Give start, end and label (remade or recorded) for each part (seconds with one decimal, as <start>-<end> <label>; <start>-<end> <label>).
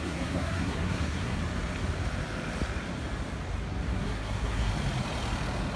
0.0-1.4 remade; 1.4-3.9 recorded; 3.9-4.7 remade; 4.7-5.8 recorded